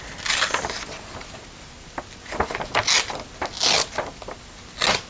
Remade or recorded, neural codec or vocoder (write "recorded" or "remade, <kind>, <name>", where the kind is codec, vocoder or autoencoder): recorded